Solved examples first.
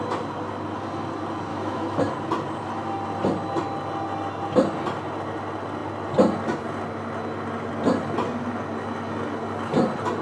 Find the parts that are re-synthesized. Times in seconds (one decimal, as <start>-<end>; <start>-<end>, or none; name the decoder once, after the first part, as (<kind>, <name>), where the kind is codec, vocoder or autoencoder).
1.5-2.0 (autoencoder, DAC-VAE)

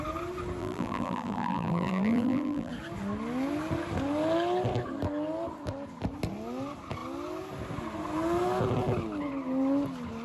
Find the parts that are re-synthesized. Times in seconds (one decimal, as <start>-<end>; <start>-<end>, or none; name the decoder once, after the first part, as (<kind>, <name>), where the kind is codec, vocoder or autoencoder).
0.6-2.7 (vocoder, BigVGAN v2)

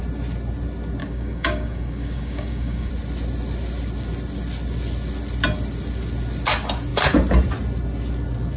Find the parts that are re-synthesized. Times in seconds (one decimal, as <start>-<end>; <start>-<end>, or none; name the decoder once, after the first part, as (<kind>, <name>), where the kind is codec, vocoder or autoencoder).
1.0-2.9 (codec, DAC)

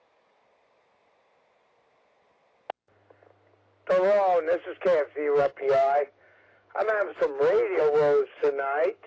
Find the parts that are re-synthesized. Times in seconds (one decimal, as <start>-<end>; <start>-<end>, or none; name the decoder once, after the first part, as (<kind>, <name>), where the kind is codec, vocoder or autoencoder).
0.0-0.4 (codec, DAC); 5.4-7.1; 7.8-9.1

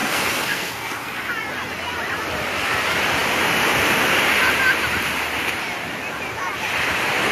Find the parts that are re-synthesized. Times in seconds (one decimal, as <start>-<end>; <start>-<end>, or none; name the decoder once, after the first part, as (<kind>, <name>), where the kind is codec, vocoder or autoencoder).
0.0-1.3 (codec, SNAC)